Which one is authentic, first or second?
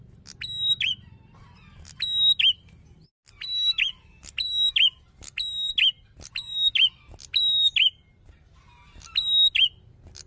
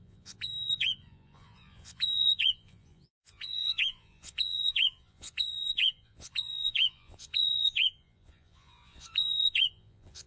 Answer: first